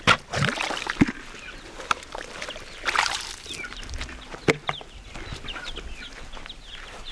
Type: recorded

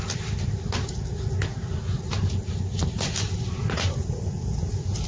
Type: recorded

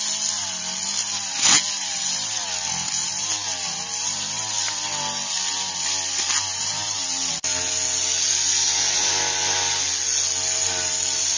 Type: recorded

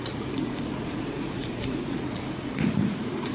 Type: remade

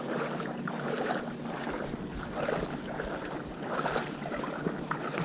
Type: recorded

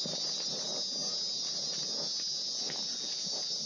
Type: recorded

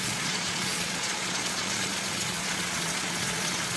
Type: remade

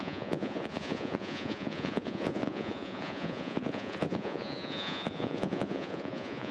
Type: remade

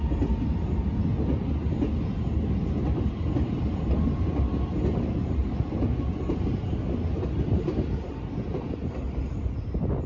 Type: recorded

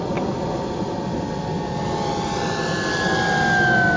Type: recorded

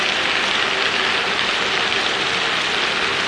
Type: recorded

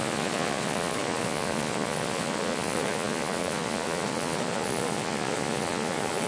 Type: remade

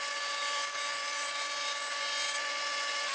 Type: remade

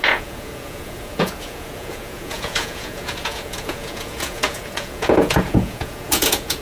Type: remade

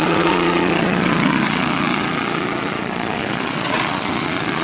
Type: remade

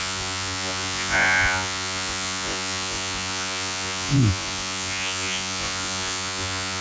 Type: remade